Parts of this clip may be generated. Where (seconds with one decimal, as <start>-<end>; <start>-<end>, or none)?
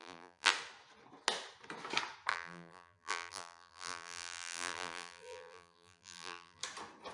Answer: 0.0-0.5; 2.3-6.6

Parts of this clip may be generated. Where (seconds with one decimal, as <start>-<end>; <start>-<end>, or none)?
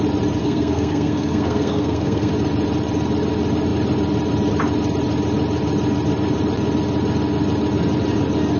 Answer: 0.4-2.3